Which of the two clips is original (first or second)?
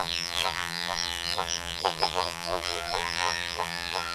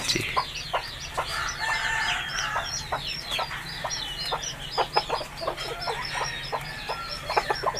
second